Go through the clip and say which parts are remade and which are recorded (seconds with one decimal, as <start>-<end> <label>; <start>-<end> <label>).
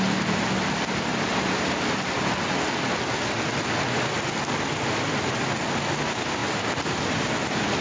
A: 0.0-7.8 recorded